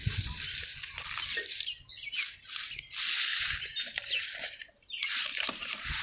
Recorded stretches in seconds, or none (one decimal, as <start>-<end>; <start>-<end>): 1.9-3.3